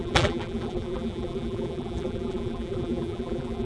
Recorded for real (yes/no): no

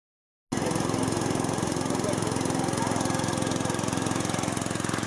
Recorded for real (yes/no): yes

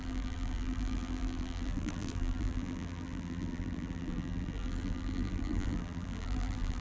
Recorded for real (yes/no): no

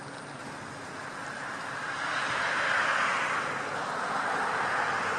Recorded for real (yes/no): yes